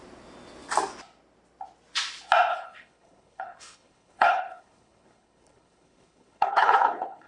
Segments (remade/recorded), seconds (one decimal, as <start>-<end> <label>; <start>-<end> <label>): 0.0-2.5 recorded; 2.5-7.3 remade